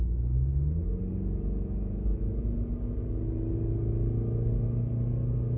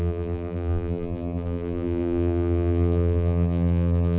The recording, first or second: first